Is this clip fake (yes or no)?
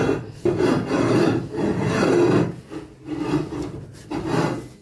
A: no